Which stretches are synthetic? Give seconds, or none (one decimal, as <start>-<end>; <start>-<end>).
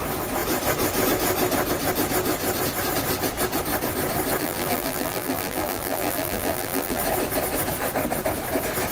4.4-7.0